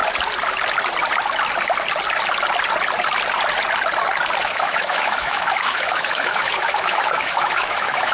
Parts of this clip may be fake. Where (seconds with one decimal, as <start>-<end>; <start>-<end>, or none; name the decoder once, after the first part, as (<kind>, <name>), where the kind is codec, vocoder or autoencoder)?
4.4-8.1 (autoencoder, DAC-VAE)